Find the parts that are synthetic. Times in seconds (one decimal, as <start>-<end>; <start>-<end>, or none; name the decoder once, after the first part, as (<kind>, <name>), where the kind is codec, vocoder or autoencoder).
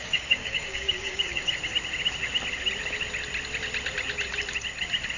0.0-1.4 (codec, DAC)